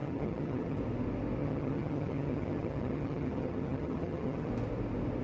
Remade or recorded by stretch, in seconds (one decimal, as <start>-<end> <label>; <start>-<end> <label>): 0.0-0.8 remade; 0.8-1.4 recorded; 1.4-4.5 remade; 4.5-5.2 recorded